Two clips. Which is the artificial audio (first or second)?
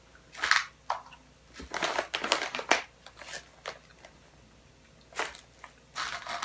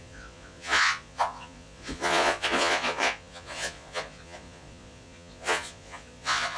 second